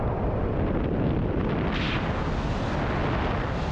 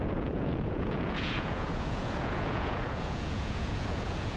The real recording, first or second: first